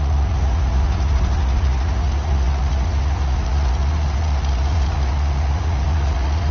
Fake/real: fake